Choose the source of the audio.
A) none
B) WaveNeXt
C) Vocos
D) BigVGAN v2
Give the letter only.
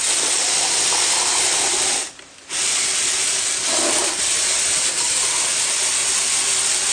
A